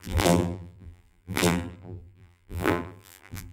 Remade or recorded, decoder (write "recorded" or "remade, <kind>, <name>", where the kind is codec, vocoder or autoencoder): remade, vocoder, BigVGAN v2